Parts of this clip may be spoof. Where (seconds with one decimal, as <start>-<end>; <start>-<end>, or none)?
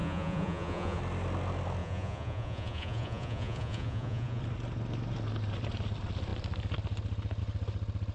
0.0-1.0; 1.8-4.4